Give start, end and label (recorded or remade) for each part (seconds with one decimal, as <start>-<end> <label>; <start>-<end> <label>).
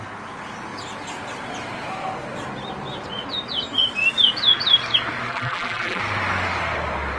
0.0-5.3 recorded; 5.3-6.0 remade; 6.0-7.2 recorded